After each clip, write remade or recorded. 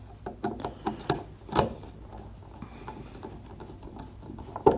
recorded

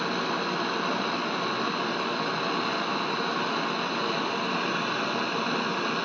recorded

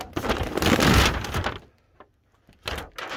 recorded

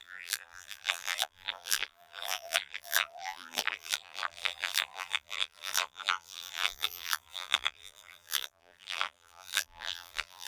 remade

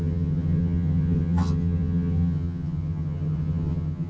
remade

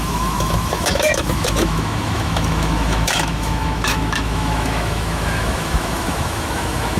remade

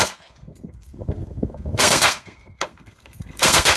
remade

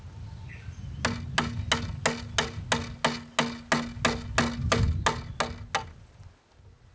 recorded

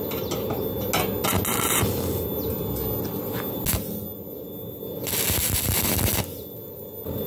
recorded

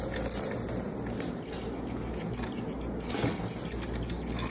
recorded